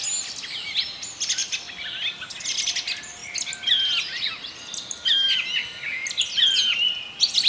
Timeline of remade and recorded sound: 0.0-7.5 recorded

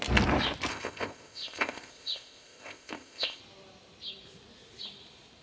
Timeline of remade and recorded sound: 0.0-0.7 recorded; 0.7-3.4 remade; 3.4-5.4 recorded